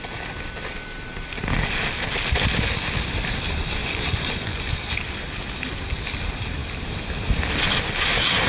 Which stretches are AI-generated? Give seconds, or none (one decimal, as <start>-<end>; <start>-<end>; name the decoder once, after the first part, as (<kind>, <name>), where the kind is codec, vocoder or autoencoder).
3.8-4.7 (vocoder, Vocos)